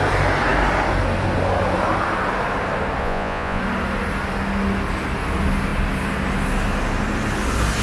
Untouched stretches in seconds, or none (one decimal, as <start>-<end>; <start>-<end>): 0.0-3.0; 3.6-7.8